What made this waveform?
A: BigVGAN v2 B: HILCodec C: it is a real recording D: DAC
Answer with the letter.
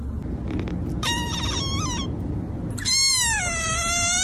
C